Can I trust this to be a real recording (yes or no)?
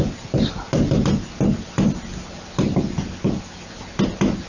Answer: yes